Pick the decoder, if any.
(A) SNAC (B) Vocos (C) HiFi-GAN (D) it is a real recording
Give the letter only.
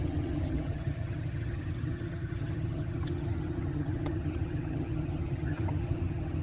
C